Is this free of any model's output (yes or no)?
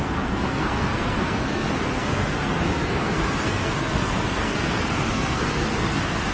no